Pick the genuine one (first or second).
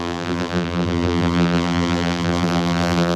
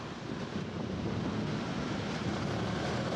second